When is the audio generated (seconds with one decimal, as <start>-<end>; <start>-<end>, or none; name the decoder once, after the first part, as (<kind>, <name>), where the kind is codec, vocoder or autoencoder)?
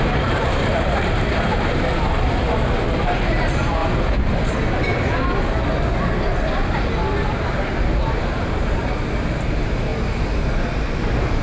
0.0-3.8 (vocoder, BigVGAN v2); 8.2-9.9; 10.9-11.4